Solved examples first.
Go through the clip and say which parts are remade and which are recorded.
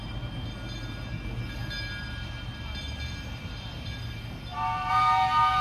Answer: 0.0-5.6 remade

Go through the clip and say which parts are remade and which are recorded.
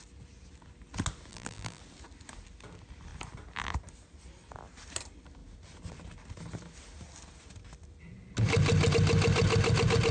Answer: 0.0-1.3 recorded; 1.3-1.8 remade; 1.8-10.1 recorded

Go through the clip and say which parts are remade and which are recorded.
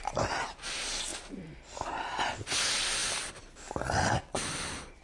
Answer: 0.0-5.0 recorded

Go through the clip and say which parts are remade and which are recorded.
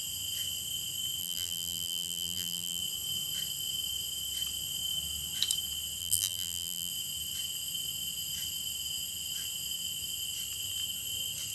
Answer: 0.0-1.2 recorded; 1.2-2.8 remade; 2.8-6.0 recorded; 6.0-6.9 remade; 6.9-11.5 recorded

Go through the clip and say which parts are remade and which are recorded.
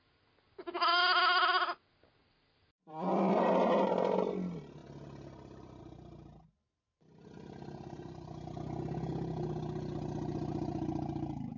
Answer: 0.0-2.2 recorded; 2.2-3.4 remade; 3.4-11.6 recorded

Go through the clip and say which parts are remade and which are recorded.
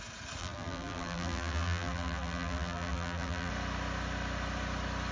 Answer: 0.0-0.4 recorded; 0.4-3.5 remade; 3.5-5.1 recorded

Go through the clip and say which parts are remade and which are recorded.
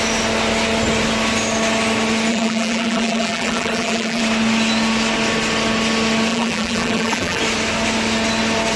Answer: 0.0-2.3 recorded; 2.3-4.2 remade; 4.2-6.3 recorded; 6.3-7.4 remade; 7.4-8.8 recorded